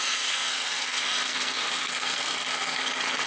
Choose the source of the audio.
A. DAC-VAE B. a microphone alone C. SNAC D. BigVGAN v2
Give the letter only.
C